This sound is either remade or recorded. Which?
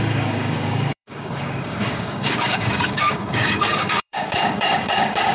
remade